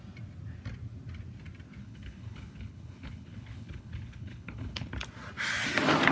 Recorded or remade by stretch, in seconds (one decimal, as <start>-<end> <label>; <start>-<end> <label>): 0.0-1.8 recorded; 1.8-4.9 remade; 4.9-6.1 recorded